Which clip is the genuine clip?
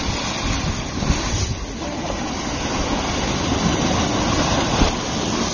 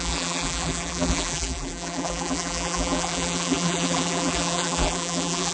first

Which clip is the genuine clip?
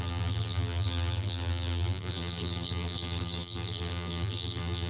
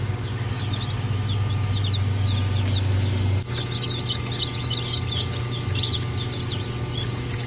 second